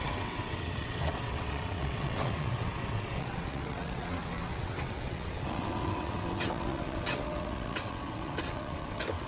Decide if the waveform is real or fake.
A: fake